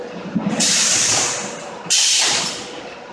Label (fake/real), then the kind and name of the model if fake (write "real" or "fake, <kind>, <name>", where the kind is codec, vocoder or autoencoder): fake, vocoder, BigVGAN v2